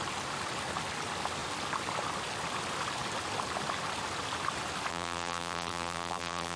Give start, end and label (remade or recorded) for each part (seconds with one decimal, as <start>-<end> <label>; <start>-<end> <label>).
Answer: 0.0-4.9 recorded; 4.9-6.6 remade